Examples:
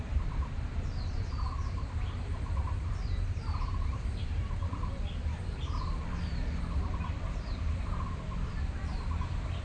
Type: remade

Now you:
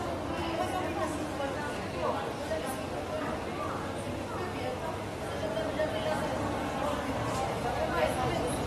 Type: recorded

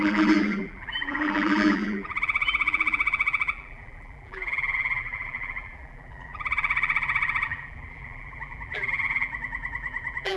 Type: remade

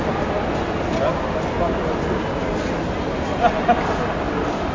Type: recorded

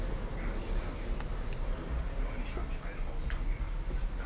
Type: recorded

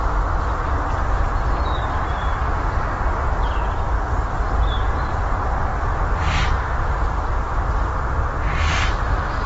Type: recorded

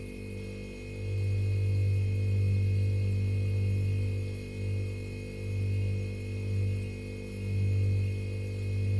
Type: recorded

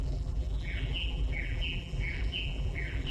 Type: remade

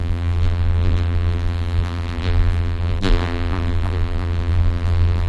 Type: remade